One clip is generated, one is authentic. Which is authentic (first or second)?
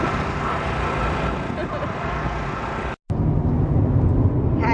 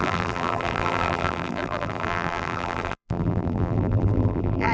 first